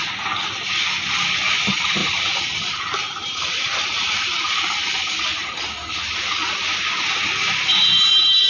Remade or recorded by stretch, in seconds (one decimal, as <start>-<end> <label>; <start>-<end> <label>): 0.0-2.0 recorded; 2.0-5.5 remade; 5.5-8.5 recorded